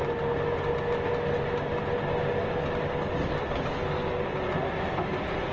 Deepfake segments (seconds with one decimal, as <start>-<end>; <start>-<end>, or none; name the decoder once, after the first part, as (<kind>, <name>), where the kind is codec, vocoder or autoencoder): none